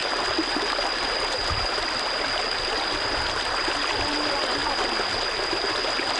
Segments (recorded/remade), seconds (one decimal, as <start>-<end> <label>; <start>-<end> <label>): 0.0-6.2 recorded